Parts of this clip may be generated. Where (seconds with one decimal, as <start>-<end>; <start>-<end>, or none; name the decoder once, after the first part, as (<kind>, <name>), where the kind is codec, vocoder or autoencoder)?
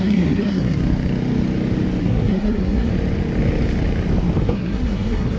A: 0.0-0.8 (codec, SNAC); 2.0-2.9; 4.4-5.4